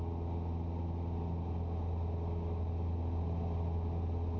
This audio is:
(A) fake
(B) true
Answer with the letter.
B